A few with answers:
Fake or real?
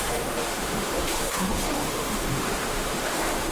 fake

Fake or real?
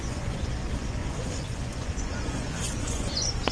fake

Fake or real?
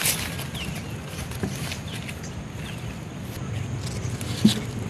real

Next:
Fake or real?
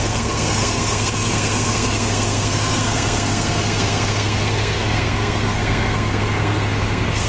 fake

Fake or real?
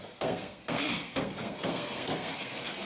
fake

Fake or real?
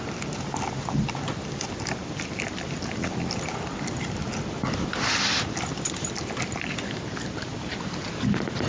real